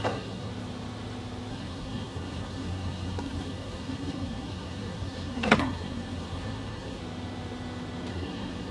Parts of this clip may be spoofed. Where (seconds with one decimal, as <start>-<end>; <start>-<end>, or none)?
0.0-0.5; 1.5-7.0; 8.1-8.7